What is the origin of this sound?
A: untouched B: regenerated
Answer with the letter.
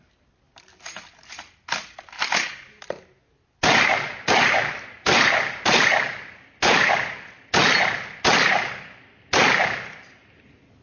A